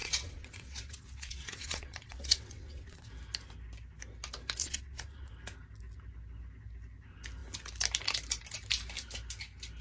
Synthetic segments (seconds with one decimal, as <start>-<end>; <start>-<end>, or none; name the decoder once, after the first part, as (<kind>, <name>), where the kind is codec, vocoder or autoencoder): 0.0-3.1 (vocoder, WaveNeXt); 4.6-5.3